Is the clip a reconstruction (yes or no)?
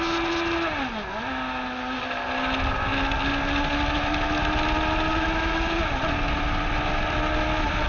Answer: no